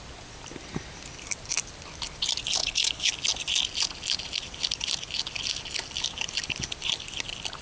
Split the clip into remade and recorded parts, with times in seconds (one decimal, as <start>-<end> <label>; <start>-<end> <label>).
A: 0.0-2.6 recorded; 2.6-3.1 remade; 3.1-7.6 recorded